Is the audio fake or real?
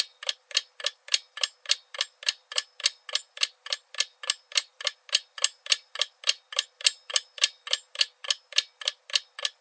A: real